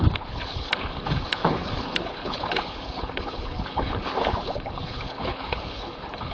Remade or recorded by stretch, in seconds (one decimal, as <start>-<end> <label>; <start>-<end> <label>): 0.0-6.3 remade